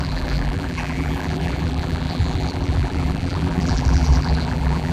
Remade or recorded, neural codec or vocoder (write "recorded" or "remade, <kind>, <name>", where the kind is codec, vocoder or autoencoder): remade, vocoder, BigVGAN v2